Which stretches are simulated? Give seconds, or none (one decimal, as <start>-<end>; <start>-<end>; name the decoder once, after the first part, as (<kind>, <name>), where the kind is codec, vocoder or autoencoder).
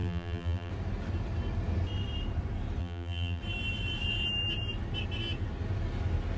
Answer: 0.0-0.7 (vocoder, BigVGAN v2); 2.8-3.4